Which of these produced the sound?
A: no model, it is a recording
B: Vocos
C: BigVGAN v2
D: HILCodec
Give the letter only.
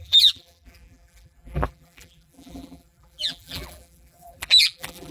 C